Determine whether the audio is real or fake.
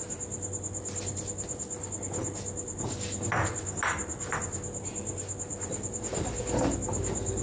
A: real